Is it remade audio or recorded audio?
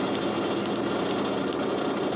recorded